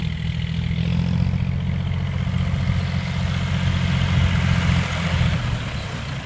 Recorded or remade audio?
recorded